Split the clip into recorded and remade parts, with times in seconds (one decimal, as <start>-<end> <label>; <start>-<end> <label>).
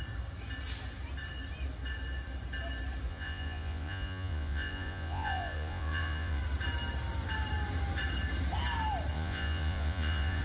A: 0.0-3.1 recorded; 3.1-6.4 remade; 6.4-9.1 recorded; 9.1-10.4 remade